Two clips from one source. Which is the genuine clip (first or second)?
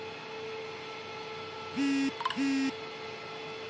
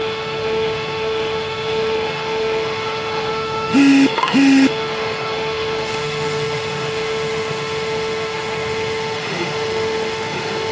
first